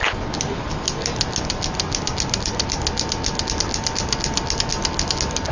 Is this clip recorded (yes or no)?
yes